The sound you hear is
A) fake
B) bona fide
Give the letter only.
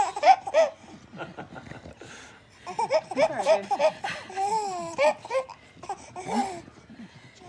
B